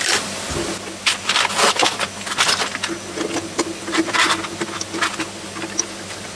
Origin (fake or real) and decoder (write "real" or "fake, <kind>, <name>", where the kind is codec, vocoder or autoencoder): fake, vocoder, BigVGAN v2